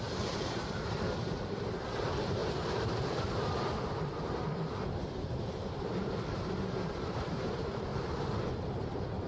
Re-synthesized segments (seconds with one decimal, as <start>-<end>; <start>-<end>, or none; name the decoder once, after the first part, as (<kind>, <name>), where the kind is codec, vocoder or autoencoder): 0.0-7.9 (vocoder, BigVGAN v2); 8.7-9.3